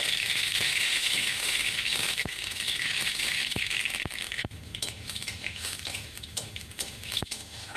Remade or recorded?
remade